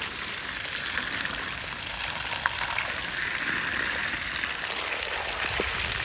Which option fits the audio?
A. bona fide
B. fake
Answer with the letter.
A